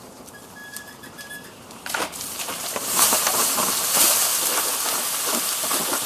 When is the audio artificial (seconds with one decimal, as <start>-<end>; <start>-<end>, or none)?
0.0-4.3